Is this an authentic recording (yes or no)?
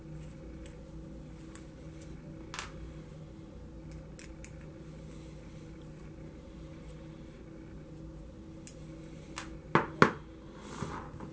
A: yes